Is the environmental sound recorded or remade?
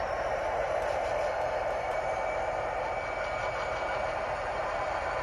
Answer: remade